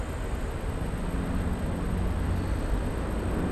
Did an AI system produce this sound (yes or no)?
no